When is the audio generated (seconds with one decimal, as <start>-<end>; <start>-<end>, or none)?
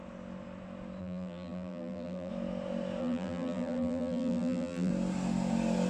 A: 1.0-2.3; 3.0-4.9